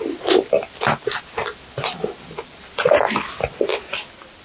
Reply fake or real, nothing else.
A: real